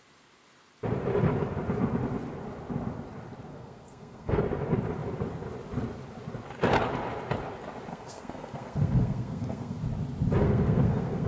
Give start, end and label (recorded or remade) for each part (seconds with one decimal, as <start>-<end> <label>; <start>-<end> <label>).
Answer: 0.0-3.5 recorded; 3.5-4.4 remade; 4.4-7.9 recorded; 7.9-9.8 remade; 9.8-10.4 recorded; 10.4-11.3 remade